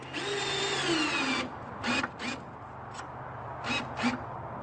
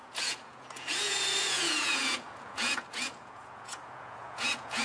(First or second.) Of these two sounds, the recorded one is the first